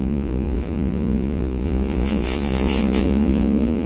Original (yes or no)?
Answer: no